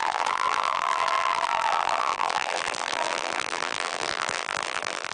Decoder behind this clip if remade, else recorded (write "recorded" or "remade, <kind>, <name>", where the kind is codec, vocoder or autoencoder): remade, vocoder, BigVGAN v2